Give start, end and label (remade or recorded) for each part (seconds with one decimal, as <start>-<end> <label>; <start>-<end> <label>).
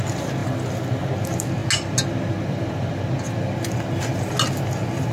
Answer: 0.0-5.1 recorded